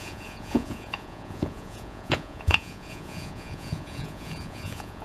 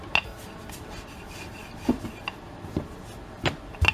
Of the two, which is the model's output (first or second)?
first